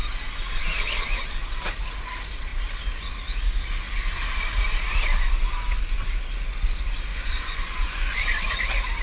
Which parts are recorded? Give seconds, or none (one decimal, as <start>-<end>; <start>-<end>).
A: 0.0-7.1; 8.2-9.0